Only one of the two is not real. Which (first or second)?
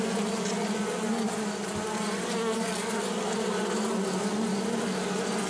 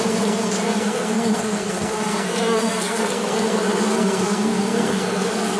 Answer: second